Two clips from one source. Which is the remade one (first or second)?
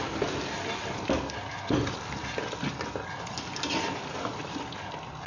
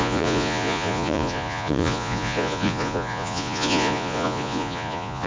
second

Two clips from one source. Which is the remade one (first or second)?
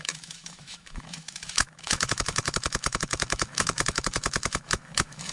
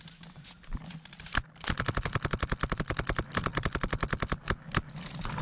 first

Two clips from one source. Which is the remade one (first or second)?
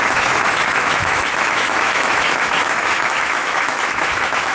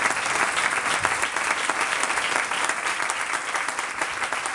first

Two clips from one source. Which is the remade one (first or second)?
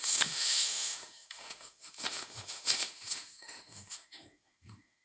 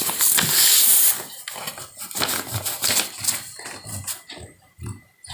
first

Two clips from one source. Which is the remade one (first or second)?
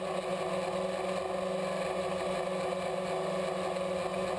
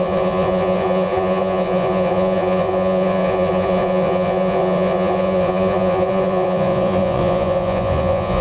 second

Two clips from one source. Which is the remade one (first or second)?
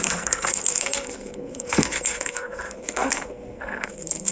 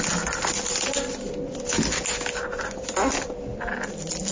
first